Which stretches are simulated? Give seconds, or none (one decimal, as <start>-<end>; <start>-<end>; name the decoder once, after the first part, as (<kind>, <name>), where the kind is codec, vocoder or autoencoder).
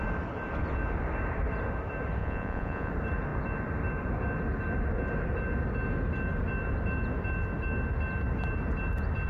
2.2-2.9 (vocoder, Vocos)